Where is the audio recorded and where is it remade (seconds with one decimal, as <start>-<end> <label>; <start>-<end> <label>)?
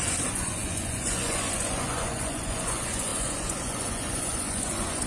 0.0-5.1 remade